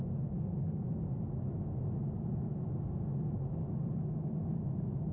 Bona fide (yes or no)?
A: yes